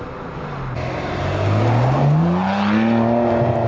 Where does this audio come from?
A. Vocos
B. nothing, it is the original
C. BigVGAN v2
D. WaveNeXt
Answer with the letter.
B